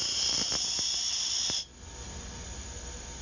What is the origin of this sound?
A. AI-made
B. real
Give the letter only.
B